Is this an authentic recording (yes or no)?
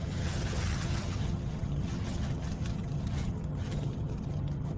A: no